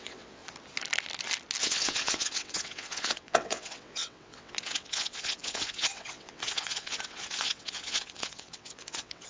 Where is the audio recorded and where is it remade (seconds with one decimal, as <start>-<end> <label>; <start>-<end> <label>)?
0.0-0.4 remade; 0.4-1.6 recorded; 1.6-9.3 remade